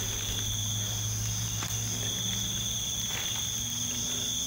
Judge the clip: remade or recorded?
recorded